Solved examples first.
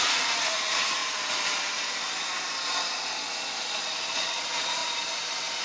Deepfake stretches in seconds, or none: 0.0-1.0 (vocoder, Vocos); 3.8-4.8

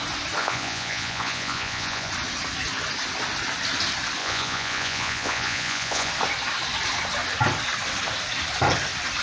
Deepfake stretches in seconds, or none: 0.4-2.1 (vocoder, Vocos); 4.2-6.1

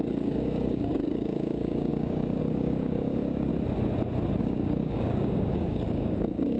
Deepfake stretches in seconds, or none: 0.0-3.5 (codec, DAC); 4.4-6.6

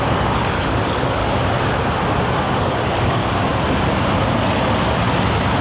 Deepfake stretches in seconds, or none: 0.0-1.2 (codec, DAC); 2.6-3.2

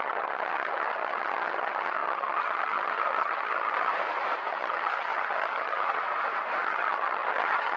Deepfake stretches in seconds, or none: 0.0-3.9 (vocoder, HiFi-GAN); 4.5-6.0; 6.6-7.8

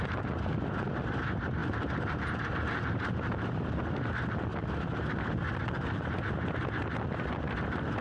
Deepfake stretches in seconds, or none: 1.6-3.8 (vocoder, BigVGAN v2)

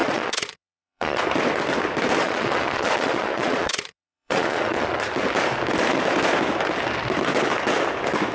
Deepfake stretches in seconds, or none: 0.0-1.2 (vocoder, Vocos); 2.2-5.0